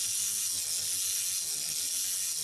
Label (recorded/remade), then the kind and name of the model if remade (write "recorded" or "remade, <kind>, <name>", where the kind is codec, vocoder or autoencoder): recorded